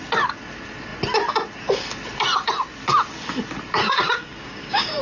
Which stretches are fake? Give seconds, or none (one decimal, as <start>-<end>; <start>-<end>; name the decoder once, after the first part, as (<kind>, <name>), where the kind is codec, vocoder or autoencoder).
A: 3.8-5.0 (codec, DAC)